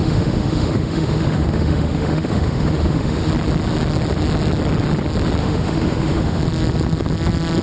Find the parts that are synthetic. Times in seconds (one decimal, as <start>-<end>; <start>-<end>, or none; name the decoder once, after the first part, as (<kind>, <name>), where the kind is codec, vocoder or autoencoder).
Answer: 0.0-3.3 (autoencoder, DAC-VAE); 5.4-6.4